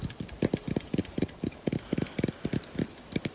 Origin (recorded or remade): remade